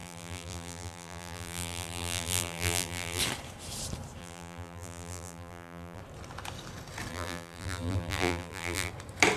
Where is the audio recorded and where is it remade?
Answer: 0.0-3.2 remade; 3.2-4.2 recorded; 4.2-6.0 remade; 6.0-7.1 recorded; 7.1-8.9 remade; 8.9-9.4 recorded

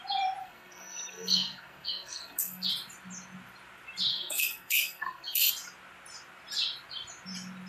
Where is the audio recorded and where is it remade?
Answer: 0.0-0.4 recorded; 0.4-2.7 remade; 2.7-4.1 recorded; 4.1-5.5 remade; 5.5-7.7 recorded